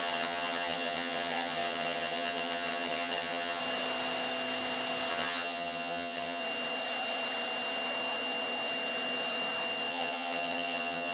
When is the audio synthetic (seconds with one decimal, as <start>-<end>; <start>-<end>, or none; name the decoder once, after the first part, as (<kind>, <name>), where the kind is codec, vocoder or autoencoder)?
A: 0.0-3.6 (vocoder, HiFi-GAN); 5.1-6.4; 9.9-11.1

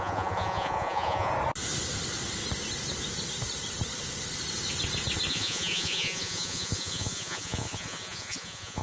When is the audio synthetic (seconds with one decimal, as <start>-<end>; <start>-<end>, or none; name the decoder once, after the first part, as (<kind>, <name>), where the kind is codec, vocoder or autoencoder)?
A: 0.0-1.3 (vocoder, Vocos); 5.3-8.8

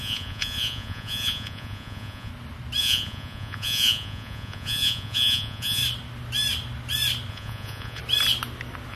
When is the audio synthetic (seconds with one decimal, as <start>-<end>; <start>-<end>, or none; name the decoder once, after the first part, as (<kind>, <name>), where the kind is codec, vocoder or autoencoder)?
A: 0.0-2.3 (vocoder, Vocos); 2.8-5.8; 7.3-8.0

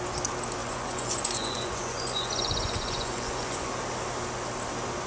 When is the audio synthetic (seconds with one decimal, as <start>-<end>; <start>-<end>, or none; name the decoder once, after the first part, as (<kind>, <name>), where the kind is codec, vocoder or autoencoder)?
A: 0.6-3.7 (vocoder, Vocos)

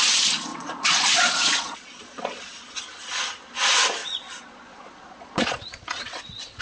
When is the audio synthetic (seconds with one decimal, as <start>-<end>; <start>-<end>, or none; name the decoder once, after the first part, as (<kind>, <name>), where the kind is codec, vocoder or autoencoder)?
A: 0.5-2.8 (vocoder, Vocos); 4.0-6.6